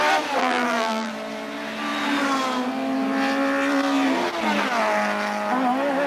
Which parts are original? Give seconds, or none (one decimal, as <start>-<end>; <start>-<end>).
0.0-0.4; 1.1-6.1